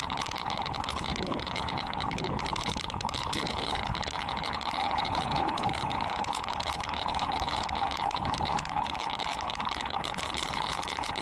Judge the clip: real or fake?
fake